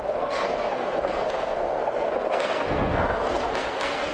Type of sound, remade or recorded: remade